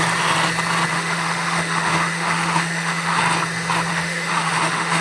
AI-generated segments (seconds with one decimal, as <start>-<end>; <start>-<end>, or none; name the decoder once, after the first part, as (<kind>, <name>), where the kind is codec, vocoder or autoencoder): 0.9-3.2 (autoencoder, DAC-VAE); 3.9-5.0